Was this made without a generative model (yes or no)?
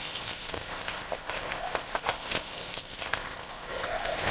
no